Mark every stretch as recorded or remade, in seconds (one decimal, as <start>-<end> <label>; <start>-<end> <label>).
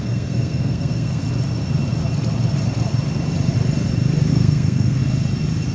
0.0-1.2 remade; 1.2-4.3 recorded; 4.3-5.0 remade; 5.0-5.7 recorded